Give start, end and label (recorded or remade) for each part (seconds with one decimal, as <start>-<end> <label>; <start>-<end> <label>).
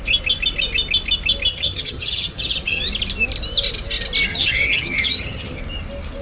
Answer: 0.0-1.5 recorded; 1.5-2.8 remade; 2.8-4.3 recorded; 4.3-5.6 remade; 5.6-6.2 recorded